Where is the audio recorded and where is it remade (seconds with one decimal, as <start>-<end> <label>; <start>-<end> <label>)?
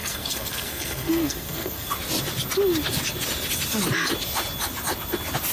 0.0-1.9 remade; 1.9-5.5 recorded